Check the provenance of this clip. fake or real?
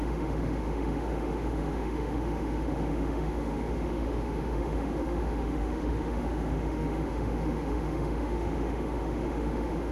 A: fake